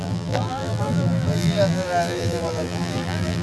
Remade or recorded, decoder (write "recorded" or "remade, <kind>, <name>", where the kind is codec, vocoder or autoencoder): remade, vocoder, BigVGAN v2